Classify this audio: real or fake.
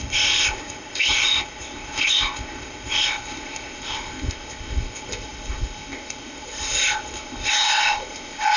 fake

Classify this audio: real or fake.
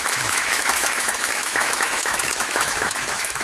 fake